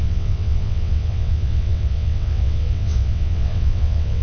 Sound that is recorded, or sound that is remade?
remade